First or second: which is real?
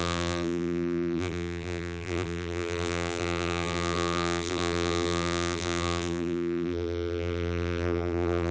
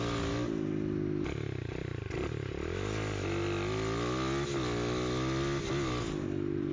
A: second